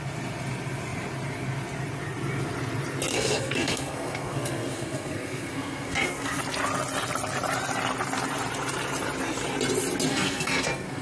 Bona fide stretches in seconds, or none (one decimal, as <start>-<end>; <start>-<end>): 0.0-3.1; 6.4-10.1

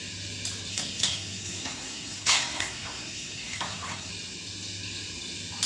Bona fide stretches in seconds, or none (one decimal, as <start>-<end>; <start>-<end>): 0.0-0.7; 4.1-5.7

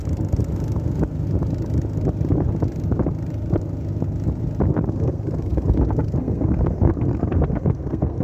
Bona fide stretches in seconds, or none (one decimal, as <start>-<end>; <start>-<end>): 0.0-4.9